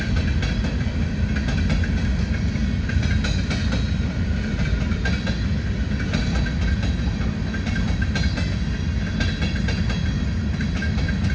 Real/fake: real